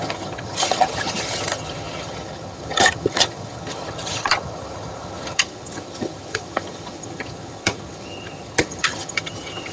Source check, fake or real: fake